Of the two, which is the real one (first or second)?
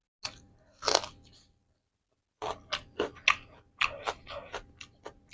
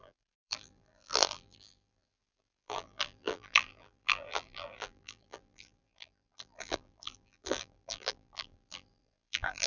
first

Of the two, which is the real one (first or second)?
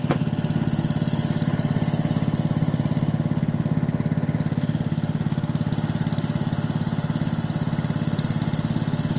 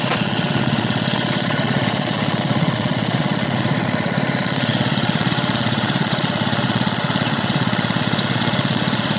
first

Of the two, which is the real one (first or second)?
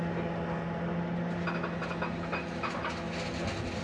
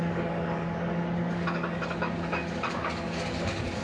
first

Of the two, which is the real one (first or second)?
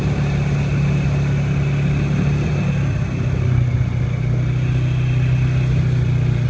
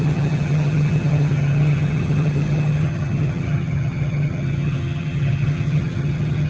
first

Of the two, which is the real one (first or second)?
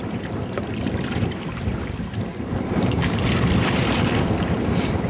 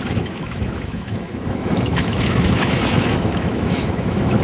first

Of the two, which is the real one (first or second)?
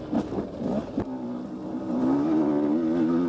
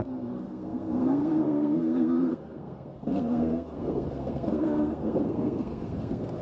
first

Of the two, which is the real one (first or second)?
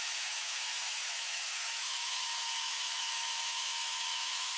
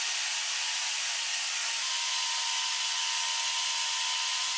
second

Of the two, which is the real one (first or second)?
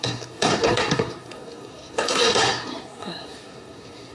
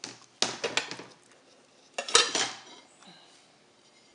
second